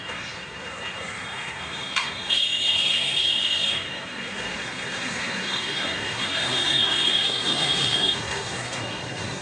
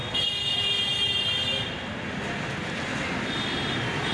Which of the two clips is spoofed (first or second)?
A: first